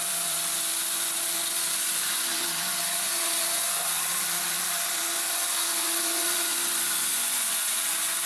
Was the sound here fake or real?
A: fake